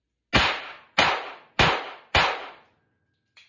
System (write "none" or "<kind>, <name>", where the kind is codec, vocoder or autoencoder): none